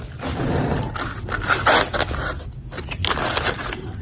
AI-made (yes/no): no